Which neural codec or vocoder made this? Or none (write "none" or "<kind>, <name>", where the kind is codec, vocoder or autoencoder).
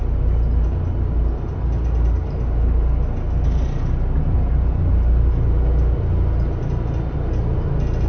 none